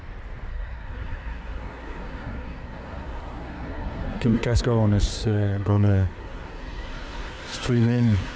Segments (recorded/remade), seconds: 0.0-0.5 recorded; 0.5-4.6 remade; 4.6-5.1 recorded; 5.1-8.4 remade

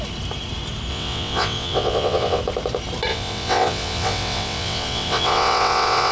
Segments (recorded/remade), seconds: 0.0-0.9 recorded; 0.9-2.4 remade; 2.4-3.1 recorded; 3.1-6.1 remade

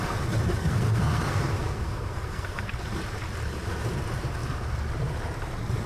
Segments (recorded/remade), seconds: 0.0-0.6 recorded; 0.6-2.8 remade; 2.8-5.9 recorded

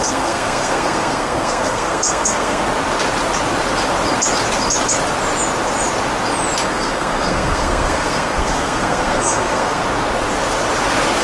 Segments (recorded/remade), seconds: 0.0-2.6 remade; 2.6-6.7 recorded; 6.7-9.8 remade; 9.8-11.2 recorded